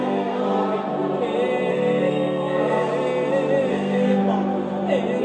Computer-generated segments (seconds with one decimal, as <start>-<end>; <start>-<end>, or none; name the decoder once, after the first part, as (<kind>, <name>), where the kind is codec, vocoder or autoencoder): 0.0-0.4 (codec, SNAC); 1.7-2.9; 3.7-4.2